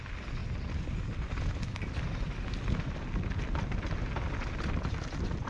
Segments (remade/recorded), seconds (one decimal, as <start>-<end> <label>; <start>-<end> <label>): 0.0-5.5 recorded